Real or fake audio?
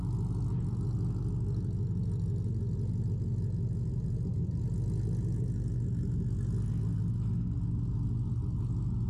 real